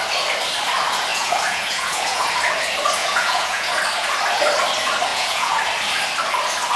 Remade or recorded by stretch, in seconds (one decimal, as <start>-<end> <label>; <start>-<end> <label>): 0.0-1.1 recorded; 1.1-2.3 remade; 2.3-3.0 recorded; 3.0-3.8 remade; 3.8-5.1 recorded; 5.1-5.6 remade; 5.6-6.8 recorded